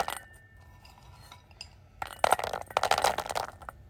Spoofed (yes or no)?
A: no